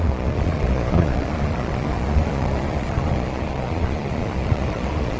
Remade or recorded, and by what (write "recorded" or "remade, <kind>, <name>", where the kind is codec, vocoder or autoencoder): remade, vocoder, Vocos